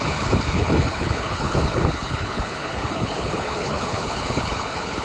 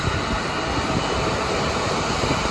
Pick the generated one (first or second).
first